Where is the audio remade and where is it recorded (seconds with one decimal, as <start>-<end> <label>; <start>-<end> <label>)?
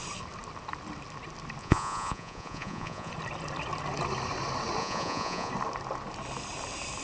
0.0-1.6 recorded; 1.6-3.1 remade; 3.1-4.8 recorded; 4.8-5.5 remade; 5.5-7.0 recorded